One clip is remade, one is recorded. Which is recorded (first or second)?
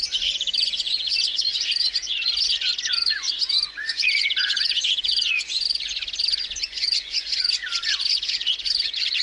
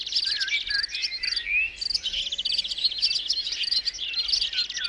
second